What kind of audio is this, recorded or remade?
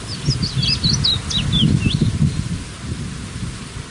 recorded